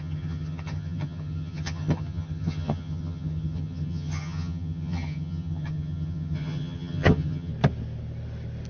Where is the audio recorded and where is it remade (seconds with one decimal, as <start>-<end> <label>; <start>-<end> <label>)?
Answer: 0.0-7.5 remade; 7.5-8.7 recorded